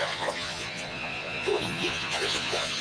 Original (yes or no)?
no